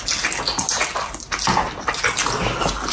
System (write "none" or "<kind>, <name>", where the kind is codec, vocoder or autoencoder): none